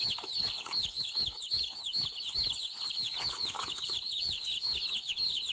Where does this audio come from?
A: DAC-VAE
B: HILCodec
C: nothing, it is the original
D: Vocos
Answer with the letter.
B